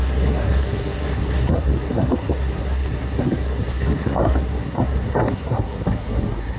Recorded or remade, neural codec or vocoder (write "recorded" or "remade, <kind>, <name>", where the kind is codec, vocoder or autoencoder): remade, codec, SNAC